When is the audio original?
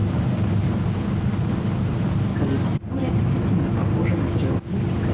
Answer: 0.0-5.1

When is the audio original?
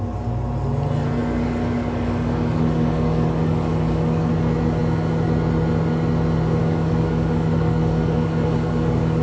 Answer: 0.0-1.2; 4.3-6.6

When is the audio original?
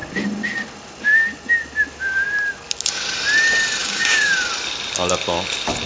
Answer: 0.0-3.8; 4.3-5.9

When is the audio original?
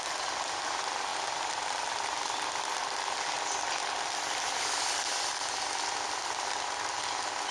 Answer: 0.0-7.5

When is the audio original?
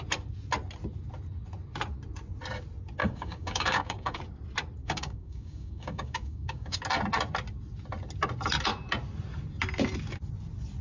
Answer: 0.0-3.0; 4.2-4.8; 6.8-10.8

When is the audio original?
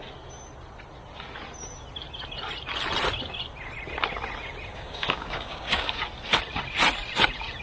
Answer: 0.0-4.7; 6.0-7.6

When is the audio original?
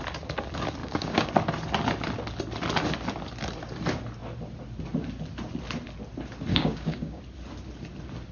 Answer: 0.0-0.8; 1.3-6.5; 7.2-8.3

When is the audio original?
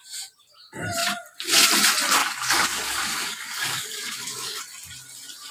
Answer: 0.0-2.2; 4.6-5.5